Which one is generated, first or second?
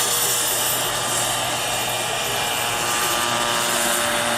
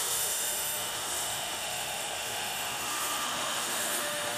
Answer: second